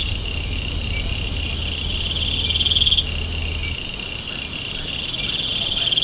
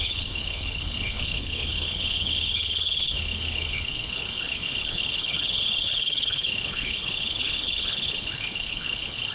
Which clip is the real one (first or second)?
first